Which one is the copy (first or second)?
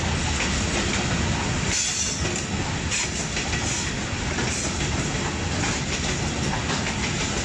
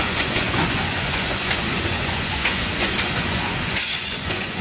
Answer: second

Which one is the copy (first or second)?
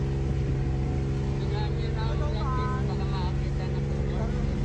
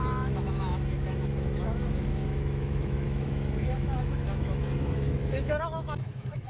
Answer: second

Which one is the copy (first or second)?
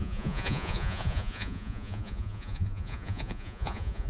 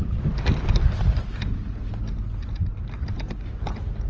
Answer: first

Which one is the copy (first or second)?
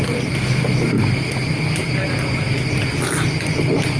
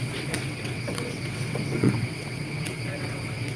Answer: second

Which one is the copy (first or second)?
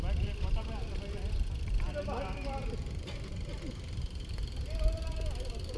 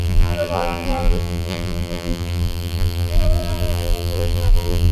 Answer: second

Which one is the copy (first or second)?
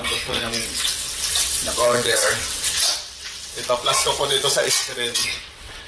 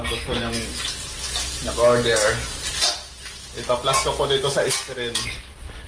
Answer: first